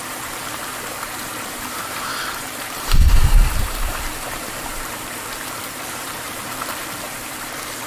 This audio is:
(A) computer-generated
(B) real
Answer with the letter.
A